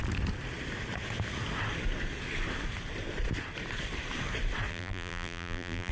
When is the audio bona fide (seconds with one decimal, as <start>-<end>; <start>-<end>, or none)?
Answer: 0.0-4.7